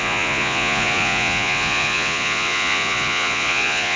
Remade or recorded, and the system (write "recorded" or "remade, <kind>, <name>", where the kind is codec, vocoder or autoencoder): remade, vocoder, Vocos